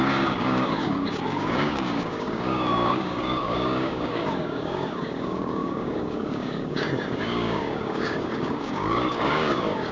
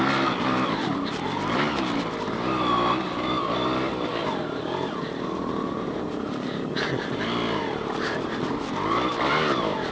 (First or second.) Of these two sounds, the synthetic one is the first